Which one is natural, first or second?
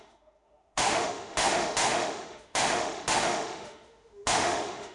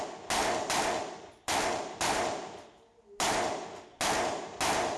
second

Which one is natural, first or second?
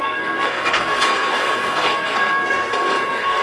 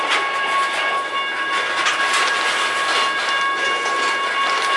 second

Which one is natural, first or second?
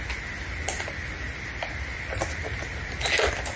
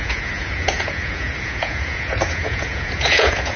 first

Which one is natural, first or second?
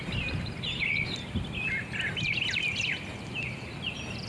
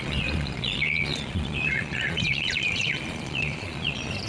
first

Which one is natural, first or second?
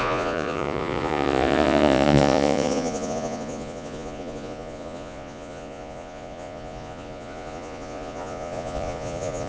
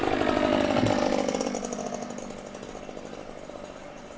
second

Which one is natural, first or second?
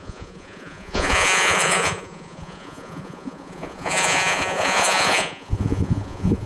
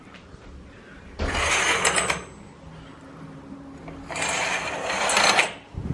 second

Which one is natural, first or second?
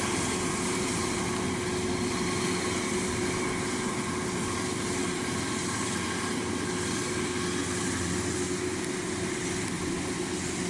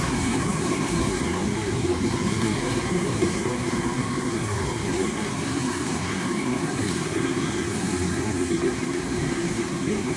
first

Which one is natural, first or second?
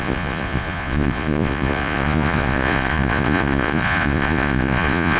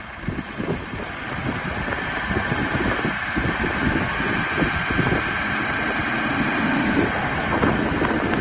second